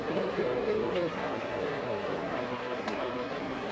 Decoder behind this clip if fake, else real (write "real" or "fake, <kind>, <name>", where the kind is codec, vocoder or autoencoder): fake, codec, SNAC